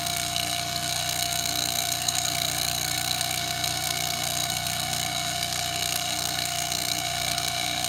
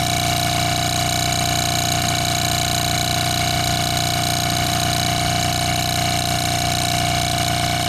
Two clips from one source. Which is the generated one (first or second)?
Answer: first